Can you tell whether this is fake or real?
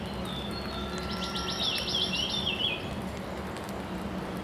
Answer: real